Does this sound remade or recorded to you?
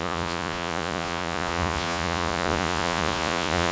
remade